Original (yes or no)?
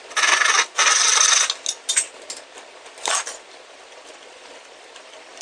yes